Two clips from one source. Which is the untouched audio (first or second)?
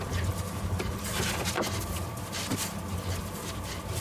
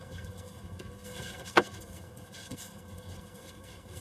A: first